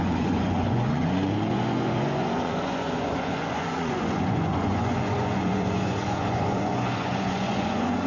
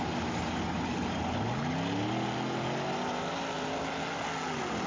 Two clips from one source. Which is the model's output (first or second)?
first